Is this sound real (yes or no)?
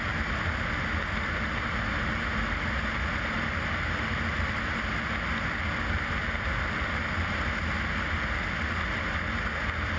yes